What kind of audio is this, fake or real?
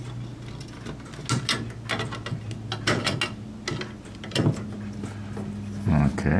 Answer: real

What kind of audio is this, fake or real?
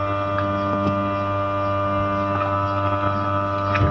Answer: real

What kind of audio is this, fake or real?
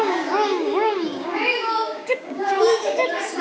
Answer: fake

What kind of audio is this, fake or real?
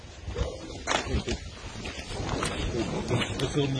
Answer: real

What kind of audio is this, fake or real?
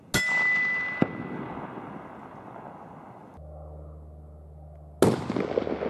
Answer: real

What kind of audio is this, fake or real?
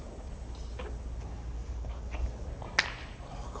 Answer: real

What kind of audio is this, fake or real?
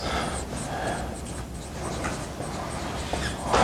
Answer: real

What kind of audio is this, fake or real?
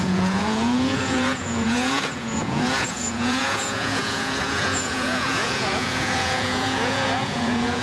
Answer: fake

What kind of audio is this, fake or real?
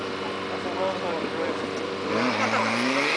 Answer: real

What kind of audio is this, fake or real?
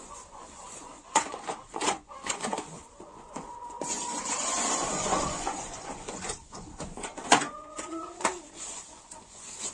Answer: fake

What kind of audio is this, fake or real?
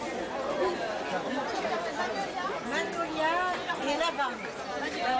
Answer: real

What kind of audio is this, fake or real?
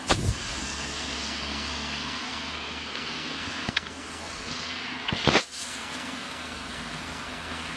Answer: fake